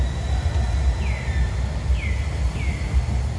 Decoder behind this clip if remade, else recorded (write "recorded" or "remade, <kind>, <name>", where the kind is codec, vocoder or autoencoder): recorded